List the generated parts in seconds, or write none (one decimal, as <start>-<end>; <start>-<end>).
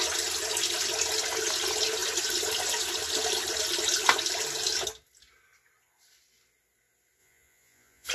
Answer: 7.2-8.1